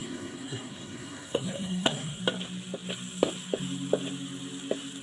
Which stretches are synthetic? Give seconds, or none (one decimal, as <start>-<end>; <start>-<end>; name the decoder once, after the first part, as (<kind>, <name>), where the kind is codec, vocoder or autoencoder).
0.0-2.2 (codec, SNAC)